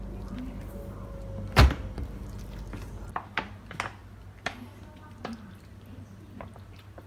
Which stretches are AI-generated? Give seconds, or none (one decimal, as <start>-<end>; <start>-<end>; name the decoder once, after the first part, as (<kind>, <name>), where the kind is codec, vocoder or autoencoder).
none